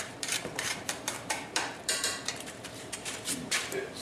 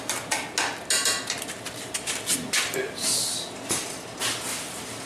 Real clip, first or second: second